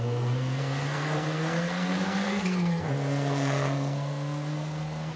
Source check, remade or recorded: remade